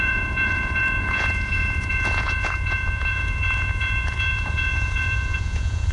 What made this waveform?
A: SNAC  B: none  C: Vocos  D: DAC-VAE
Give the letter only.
C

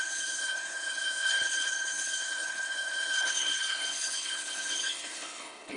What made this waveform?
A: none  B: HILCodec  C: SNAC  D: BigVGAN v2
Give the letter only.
B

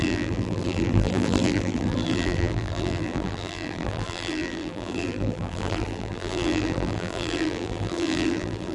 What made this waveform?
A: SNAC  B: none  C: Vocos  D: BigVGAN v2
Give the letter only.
D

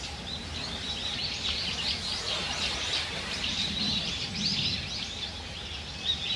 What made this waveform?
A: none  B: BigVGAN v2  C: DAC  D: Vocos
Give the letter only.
A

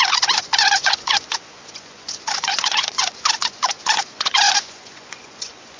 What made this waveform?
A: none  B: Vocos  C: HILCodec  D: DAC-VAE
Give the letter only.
B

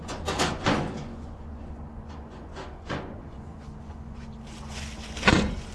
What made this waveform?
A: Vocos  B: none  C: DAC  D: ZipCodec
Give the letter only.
A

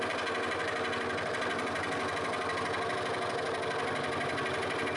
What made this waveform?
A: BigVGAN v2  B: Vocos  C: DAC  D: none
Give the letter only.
D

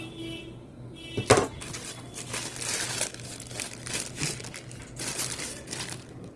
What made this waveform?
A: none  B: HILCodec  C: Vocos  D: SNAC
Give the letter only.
A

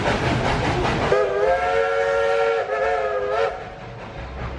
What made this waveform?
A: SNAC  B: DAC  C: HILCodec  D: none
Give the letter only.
D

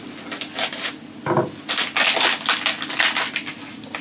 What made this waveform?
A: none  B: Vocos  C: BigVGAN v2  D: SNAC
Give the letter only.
A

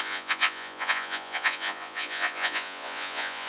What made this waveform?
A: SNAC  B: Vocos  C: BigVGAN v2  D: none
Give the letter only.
B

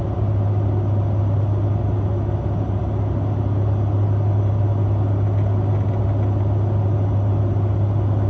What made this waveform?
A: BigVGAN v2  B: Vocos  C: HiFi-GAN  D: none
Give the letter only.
D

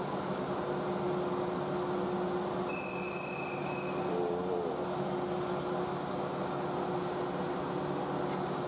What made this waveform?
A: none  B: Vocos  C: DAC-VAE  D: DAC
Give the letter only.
A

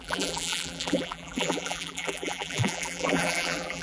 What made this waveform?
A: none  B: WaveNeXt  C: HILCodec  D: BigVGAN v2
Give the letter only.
D